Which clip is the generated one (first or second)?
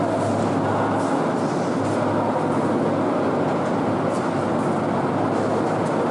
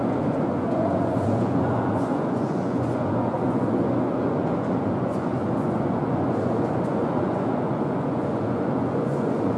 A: second